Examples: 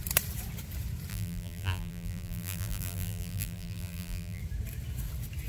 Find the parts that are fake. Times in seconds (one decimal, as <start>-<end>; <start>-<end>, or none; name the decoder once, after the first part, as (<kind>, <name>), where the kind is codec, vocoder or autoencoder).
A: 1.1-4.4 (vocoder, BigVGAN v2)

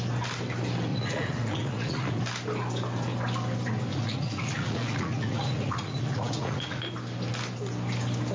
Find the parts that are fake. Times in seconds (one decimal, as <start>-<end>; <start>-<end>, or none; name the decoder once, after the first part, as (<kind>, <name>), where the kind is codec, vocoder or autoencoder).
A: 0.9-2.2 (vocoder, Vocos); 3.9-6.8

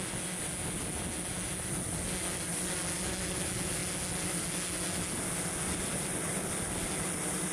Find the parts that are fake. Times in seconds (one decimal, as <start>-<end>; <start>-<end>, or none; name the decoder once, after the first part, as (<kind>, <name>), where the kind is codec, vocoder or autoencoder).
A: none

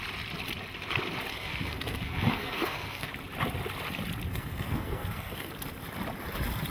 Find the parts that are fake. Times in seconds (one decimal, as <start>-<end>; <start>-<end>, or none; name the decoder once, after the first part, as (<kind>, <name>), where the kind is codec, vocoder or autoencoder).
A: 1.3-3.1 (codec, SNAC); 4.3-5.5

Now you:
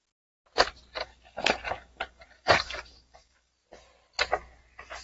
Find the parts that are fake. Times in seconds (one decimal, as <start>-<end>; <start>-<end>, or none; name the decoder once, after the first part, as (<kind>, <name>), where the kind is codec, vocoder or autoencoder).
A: 1.0-3.5 (codec, DAC)